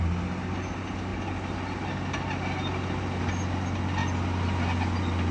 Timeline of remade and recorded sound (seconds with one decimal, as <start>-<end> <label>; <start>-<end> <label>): 0.0-5.3 recorded